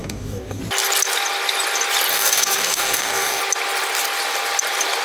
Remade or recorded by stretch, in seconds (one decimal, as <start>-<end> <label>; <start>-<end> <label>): 0.0-0.6 remade; 0.6-2.1 recorded; 2.1-3.4 remade; 3.4-5.0 recorded